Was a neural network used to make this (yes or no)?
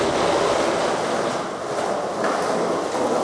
no